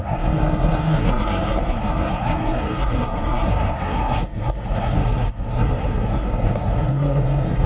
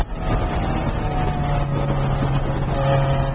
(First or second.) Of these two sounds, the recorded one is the second